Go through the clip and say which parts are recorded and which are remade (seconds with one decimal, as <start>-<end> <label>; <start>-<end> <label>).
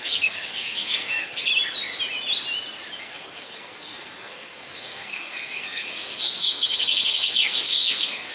0.0-1.5 remade; 1.5-3.0 recorded; 3.0-8.3 remade